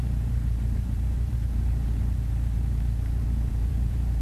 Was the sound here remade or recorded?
remade